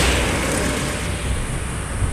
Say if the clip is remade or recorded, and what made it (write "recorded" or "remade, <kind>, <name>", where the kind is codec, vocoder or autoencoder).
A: recorded